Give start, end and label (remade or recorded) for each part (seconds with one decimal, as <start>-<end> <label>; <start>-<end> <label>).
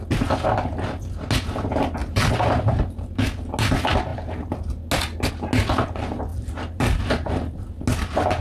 0.0-2.0 recorded; 2.0-3.5 remade; 3.5-6.3 recorded; 6.3-7.6 remade; 7.6-8.4 recorded